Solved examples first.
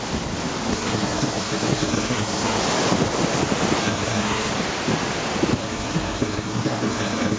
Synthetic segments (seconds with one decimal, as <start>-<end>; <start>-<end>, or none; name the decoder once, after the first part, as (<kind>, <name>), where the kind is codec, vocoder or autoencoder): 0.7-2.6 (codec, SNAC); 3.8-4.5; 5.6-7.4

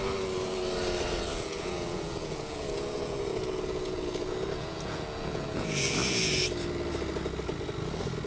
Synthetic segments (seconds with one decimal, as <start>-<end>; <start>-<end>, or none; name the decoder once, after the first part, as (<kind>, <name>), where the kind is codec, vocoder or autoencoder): 1.3-6.3 (vocoder, Vocos)

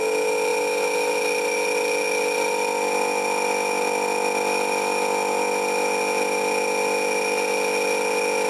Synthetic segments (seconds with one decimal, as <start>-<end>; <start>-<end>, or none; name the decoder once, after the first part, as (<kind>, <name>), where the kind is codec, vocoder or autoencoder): none

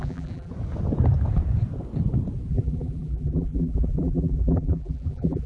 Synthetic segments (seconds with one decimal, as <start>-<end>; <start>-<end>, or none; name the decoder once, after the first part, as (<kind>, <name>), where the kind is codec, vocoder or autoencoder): 0.0-0.5 (vocoder, BigVGAN v2); 2.5-5.5

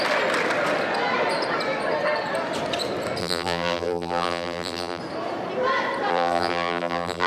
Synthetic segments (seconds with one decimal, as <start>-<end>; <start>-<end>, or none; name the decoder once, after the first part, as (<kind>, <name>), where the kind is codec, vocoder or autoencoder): 3.2-5.0 (vocoder, BigVGAN v2); 6.1-7.3